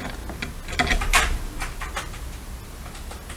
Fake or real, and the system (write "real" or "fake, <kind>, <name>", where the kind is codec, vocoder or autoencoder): real